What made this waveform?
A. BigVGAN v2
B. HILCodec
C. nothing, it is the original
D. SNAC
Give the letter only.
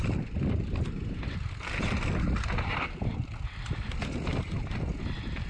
C